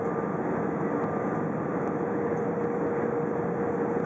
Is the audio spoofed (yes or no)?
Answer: no